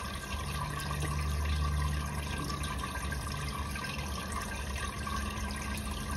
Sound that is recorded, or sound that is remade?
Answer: recorded